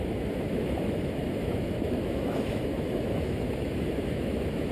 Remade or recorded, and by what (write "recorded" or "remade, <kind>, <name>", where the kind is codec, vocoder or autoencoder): remade, autoencoder, DAC-VAE